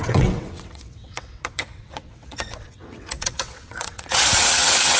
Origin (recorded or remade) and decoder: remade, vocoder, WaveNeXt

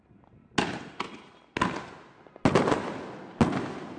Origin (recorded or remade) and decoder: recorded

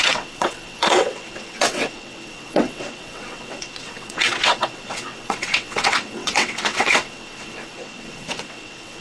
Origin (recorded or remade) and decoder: remade, vocoder, WaveNeXt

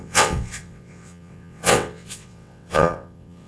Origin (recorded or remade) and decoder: remade, vocoder, WaveNeXt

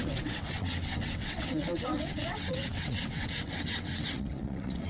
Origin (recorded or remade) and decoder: remade, vocoder, WaveNeXt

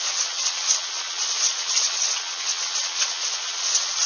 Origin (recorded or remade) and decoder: remade, vocoder, WaveNeXt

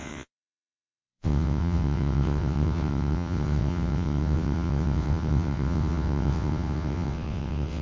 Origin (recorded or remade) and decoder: remade, vocoder, WaveNeXt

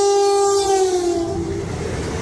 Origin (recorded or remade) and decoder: recorded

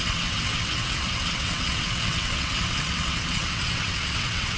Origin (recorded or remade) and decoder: remade, vocoder, WaveNeXt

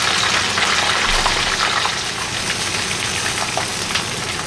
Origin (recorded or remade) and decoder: recorded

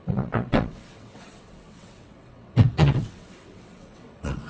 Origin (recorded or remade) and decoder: remade, vocoder, WaveNeXt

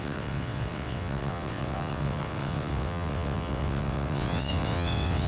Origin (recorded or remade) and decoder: remade, vocoder, WaveNeXt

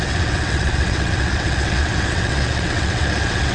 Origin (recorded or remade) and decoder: remade, vocoder, WaveNeXt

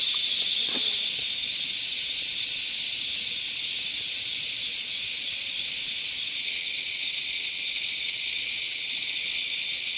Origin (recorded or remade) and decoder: remade, vocoder, WaveNeXt